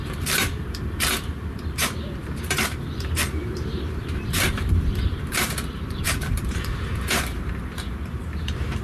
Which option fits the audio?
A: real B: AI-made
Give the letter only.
B